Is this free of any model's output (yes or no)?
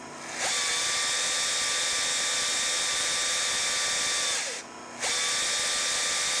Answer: yes